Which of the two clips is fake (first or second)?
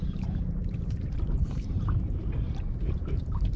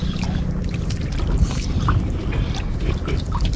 first